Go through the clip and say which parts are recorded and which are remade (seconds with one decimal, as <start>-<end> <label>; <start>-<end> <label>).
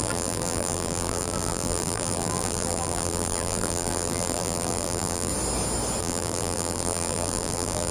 0.0-5.3 remade; 5.3-6.0 recorded; 6.0-7.9 remade